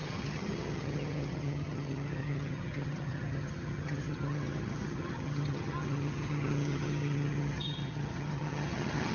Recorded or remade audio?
remade